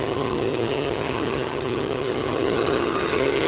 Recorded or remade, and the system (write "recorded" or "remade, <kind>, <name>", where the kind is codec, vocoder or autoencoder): remade, vocoder, HiFi-GAN